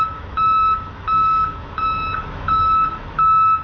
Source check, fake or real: fake